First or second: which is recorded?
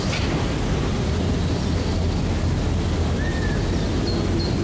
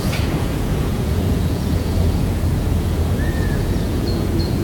first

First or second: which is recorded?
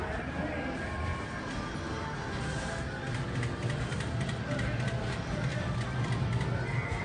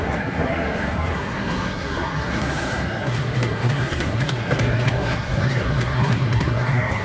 first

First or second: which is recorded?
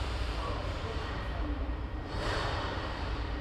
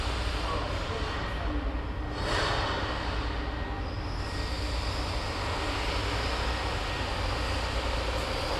second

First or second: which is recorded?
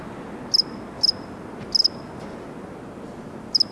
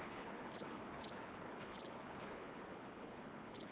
first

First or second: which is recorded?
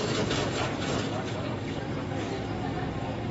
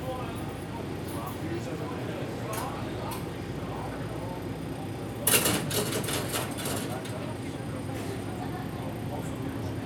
second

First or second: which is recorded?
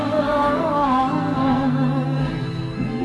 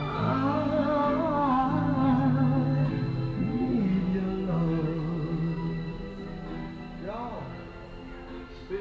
second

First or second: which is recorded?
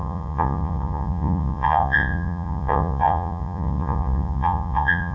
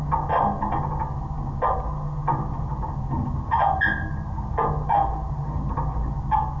second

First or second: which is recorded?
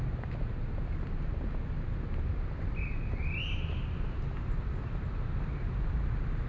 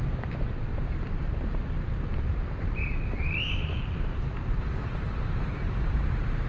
first